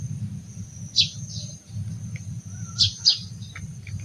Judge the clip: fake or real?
real